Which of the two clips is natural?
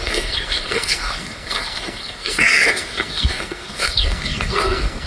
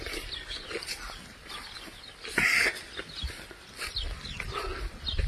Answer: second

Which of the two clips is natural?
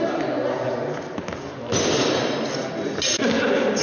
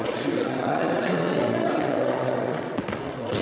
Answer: first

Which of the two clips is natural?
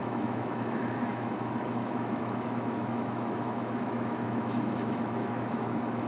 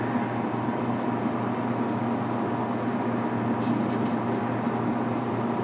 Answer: second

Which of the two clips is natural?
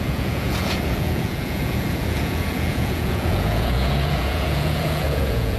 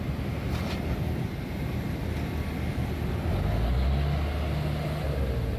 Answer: second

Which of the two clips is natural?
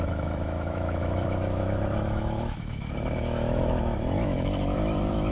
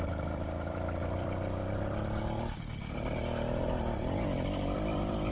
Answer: second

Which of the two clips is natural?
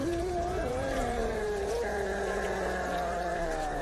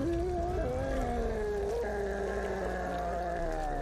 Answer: second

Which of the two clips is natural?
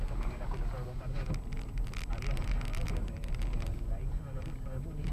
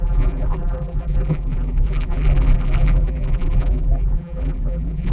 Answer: first